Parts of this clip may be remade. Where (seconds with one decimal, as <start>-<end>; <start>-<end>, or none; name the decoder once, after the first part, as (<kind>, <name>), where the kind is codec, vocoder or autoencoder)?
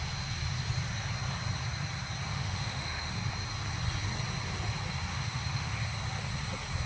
2.3-3.1 (autoencoder, DAC-VAE); 5.1-5.8